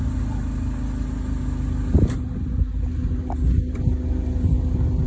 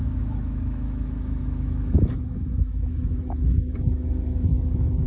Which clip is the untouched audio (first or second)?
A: first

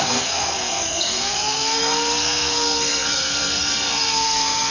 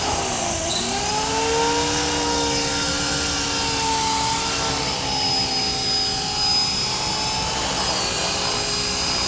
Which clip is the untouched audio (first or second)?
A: second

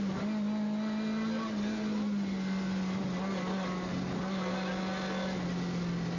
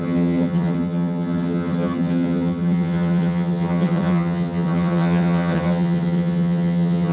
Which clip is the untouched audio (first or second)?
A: first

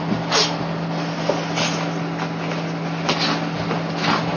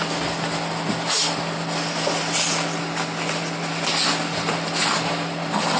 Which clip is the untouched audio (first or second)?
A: first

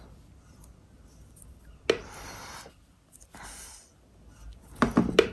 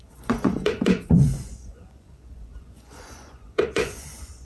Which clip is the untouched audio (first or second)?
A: first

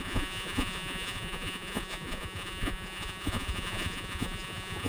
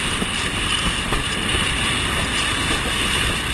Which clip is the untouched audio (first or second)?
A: second